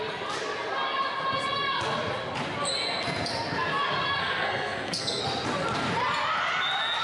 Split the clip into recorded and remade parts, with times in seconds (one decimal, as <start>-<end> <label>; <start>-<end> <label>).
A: 0.0-4.2 recorded; 4.2-5.2 remade; 5.2-7.0 recorded